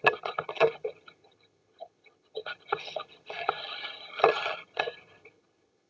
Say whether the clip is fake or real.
fake